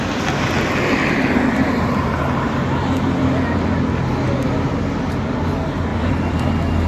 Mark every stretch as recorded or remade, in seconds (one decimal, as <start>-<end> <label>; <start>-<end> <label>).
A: 0.0-5.9 recorded; 5.9-6.5 remade; 6.5-6.9 recorded